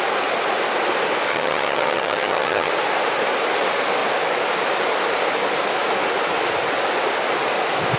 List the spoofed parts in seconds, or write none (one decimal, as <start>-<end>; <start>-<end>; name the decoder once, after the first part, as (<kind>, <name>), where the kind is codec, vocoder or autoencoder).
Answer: 1.3-2.7 (vocoder, HiFi-GAN)